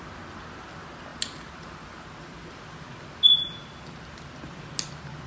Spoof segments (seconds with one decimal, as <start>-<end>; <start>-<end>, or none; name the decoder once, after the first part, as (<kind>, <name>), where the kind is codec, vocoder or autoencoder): none